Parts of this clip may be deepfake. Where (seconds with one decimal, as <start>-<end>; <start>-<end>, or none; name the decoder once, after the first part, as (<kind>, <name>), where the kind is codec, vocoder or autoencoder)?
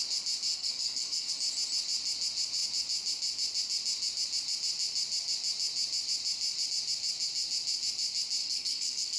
0.5-1.3 (codec, SNAC); 8.4-9.2